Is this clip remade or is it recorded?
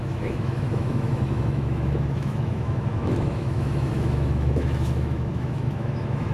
remade